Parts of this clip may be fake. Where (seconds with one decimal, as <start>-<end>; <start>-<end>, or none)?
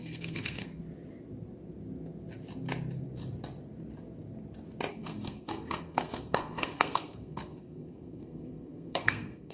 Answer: 0.0-0.8; 4.9-9.5